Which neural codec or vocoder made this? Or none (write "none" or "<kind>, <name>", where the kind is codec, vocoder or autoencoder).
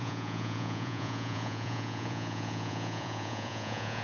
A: vocoder, Vocos